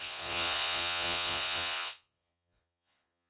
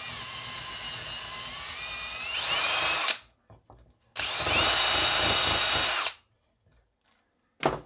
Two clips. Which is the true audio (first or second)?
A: second